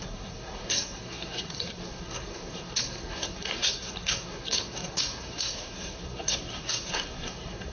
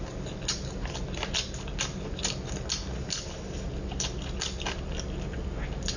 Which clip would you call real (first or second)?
second